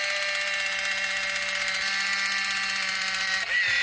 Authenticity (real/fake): real